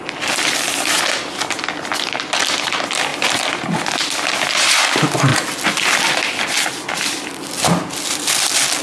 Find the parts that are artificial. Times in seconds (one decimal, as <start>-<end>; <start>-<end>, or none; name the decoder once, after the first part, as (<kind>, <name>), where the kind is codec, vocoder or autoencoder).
none